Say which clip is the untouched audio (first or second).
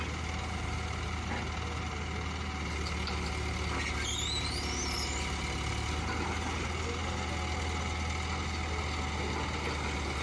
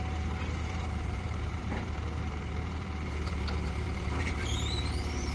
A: first